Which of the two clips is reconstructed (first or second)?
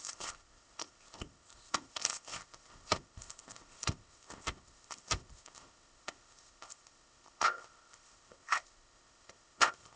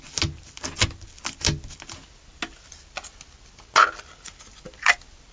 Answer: first